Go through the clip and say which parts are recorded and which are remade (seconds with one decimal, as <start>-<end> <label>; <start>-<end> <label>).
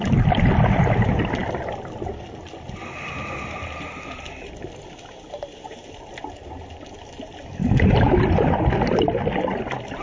0.0-10.0 recorded